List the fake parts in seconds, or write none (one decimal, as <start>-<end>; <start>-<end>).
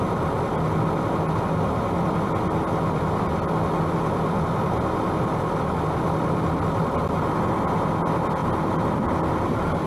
none